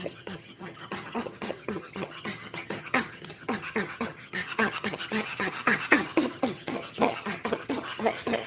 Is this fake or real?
fake